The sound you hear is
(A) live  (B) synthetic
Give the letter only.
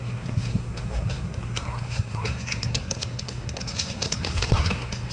B